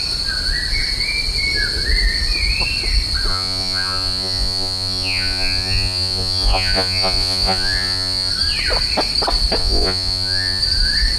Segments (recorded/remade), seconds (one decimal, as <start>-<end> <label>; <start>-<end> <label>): 0.0-3.3 recorded; 3.3-8.3 remade; 8.3-9.6 recorded; 9.6-10.6 remade; 10.6-11.2 recorded